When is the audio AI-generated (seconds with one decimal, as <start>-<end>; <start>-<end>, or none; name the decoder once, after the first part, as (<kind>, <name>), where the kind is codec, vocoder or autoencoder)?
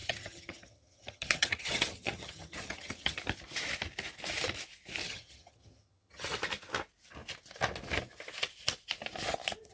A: 0.0-3.2 (vocoder, HiFi-GAN); 5.0-6.4